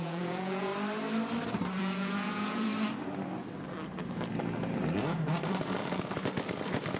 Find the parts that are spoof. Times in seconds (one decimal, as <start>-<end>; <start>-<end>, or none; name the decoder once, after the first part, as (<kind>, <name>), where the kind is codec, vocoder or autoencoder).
0.0-0.7 (vocoder, Vocos); 1.8-2.7